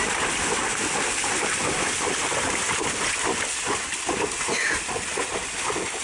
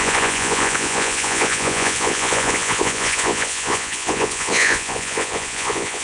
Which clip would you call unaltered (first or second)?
first